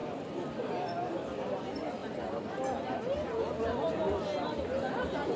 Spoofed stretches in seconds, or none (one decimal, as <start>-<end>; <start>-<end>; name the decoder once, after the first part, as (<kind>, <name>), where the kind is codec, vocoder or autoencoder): none